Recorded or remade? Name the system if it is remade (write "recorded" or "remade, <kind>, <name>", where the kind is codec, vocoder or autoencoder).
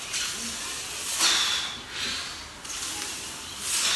recorded